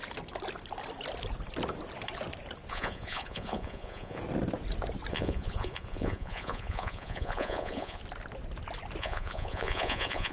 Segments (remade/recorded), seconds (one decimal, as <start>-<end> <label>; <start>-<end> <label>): 0.0-2.7 recorded; 2.7-4.2 remade; 4.2-5.1 recorded; 5.1-8.0 remade; 8.0-9.0 recorded; 9.0-10.3 remade